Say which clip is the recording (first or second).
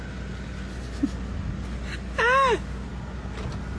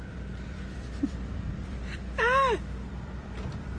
first